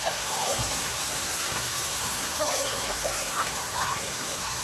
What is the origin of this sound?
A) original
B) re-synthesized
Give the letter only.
B